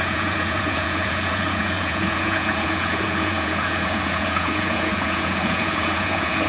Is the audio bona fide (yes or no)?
no